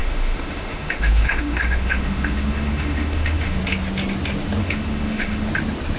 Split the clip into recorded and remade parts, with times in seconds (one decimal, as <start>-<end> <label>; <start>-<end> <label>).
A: 0.0-3.6 remade; 3.6-4.6 recorded; 4.6-5.5 remade; 5.5-6.0 recorded